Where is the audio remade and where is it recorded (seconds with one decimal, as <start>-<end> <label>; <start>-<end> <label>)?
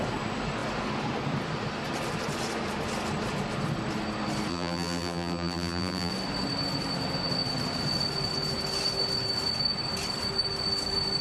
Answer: 0.0-4.5 recorded; 4.5-6.1 remade; 6.1-11.2 recorded